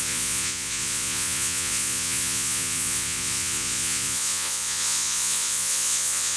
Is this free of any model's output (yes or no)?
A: no